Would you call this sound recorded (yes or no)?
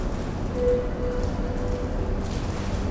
yes